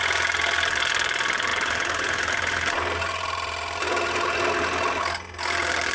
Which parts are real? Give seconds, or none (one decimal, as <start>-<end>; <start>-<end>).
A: 0.0-1.5; 5.0-5.9

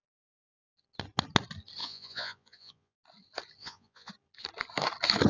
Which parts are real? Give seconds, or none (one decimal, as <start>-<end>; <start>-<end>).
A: 0.0-1.8; 3.0-3.6; 4.1-5.3

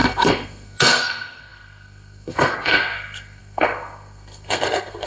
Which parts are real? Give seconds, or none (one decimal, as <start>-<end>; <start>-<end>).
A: none

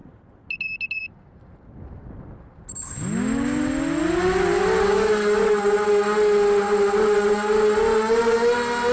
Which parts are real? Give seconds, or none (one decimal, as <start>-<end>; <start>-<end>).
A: 0.0-8.9